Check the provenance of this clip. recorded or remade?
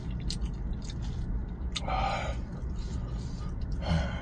recorded